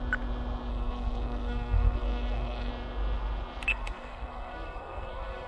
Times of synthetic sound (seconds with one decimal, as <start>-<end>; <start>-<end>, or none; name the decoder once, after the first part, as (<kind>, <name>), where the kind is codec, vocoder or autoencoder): 0.7-2.7 (codec, SNAC); 3.7-5.5